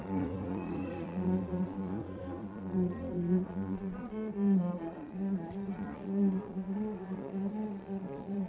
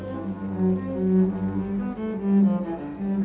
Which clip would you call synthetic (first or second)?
first